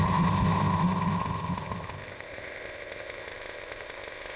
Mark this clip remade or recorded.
remade